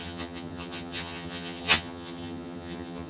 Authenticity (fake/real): fake